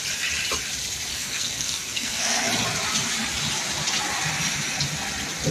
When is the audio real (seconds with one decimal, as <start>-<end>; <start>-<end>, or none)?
0.0-1.1; 2.5-5.5